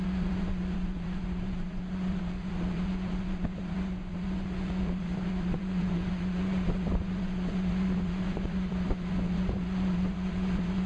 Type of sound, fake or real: fake